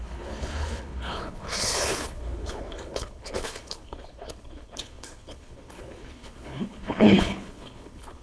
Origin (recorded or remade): remade